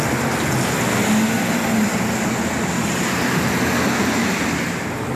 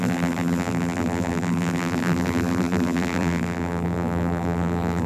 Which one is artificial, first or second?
second